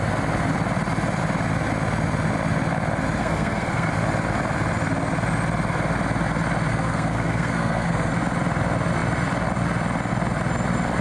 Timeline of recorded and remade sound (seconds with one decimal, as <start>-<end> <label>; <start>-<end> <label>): 0.0-3.2 recorded; 3.2-3.9 remade; 3.9-6.7 recorded; 6.7-8.1 remade; 8.1-11.0 recorded